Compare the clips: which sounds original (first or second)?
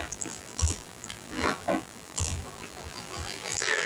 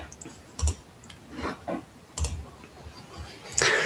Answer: second